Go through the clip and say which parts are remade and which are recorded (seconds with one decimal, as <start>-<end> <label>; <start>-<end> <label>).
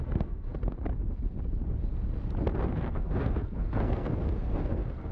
0.0-0.5 remade; 0.5-2.7 recorded; 2.7-5.1 remade